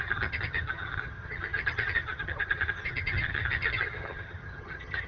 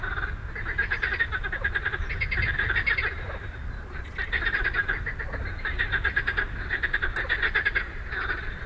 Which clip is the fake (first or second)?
first